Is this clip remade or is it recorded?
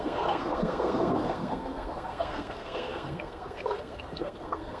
remade